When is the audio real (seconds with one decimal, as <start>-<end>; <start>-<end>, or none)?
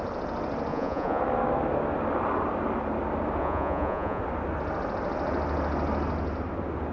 0.0-0.7; 1.2-3.4; 4.2-6.9